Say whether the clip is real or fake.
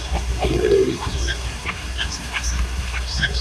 fake